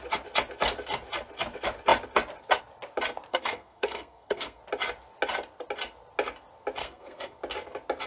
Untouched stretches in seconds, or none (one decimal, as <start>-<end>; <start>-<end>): 0.0-3.3; 4.6-6.8; 7.4-8.1